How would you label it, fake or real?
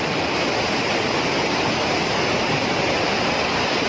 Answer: real